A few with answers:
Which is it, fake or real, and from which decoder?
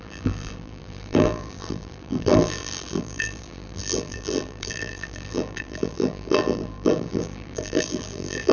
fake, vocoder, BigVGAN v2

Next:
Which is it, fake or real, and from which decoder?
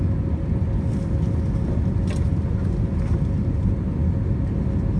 real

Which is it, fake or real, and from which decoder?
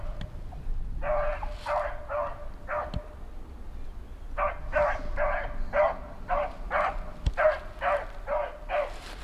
real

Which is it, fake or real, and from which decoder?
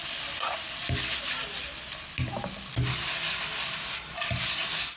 real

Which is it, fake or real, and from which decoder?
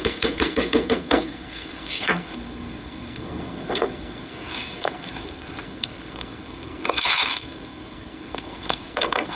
fake, codec, SNAC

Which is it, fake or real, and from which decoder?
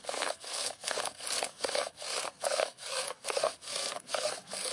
fake, codec, SNAC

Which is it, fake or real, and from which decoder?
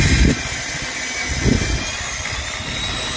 real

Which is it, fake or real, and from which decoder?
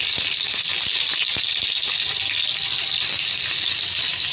fake, vocoder, BigVGAN v2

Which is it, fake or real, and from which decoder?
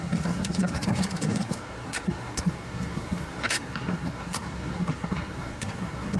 fake, codec, SNAC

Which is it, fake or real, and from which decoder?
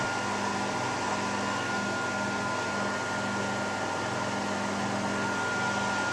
real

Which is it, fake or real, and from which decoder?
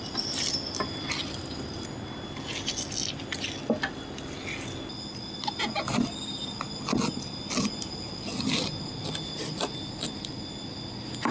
real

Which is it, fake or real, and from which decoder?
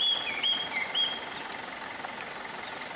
real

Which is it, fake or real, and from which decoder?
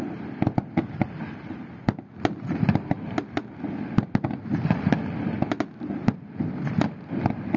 real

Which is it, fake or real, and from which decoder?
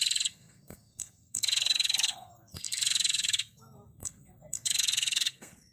fake, codec, SNAC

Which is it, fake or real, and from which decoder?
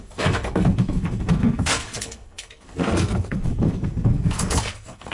fake, codec, SNAC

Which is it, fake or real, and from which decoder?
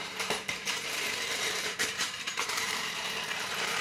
fake, vocoder, BigVGAN v2